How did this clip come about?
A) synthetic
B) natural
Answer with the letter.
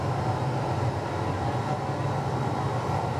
B